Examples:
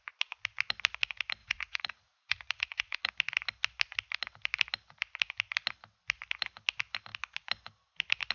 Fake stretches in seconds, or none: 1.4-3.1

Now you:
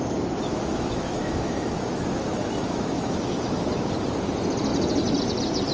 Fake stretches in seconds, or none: 0.5-3.9

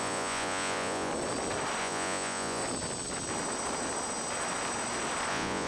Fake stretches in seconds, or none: 0.0-1.1; 1.8-2.6; 5.3-5.7

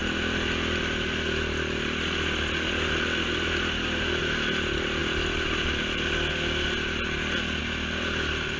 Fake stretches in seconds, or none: none

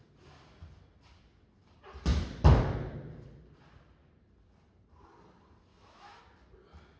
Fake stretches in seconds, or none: 5.7-6.2

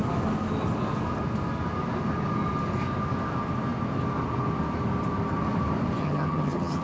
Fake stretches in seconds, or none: 6.0-6.8

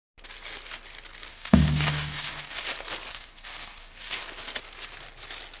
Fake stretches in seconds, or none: 1.3-2.6; 3.1-4.2